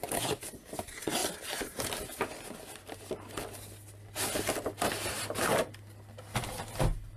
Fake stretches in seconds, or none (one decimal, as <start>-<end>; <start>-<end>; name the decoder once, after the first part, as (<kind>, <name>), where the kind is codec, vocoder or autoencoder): 0.0-0.5 (vocoder, BigVGAN v2)